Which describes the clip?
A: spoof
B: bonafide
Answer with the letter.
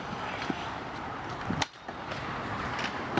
B